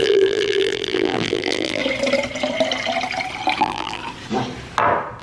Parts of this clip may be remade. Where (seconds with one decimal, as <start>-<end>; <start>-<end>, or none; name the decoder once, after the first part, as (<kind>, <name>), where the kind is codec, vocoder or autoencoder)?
0.0-1.8 (vocoder, BigVGAN v2); 3.6-4.0